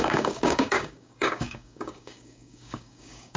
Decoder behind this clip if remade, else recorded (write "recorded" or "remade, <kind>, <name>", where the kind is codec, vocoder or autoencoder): remade, codec, DAC